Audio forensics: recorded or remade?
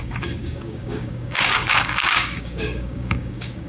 remade